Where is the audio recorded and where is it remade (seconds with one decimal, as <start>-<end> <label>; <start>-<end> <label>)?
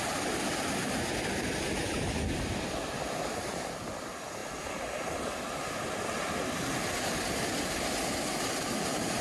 0.0-9.2 recorded